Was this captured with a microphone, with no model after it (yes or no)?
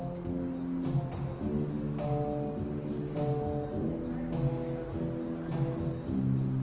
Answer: yes